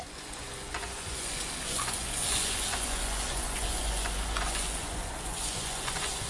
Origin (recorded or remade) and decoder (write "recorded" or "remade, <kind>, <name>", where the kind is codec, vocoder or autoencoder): remade, vocoder, Vocos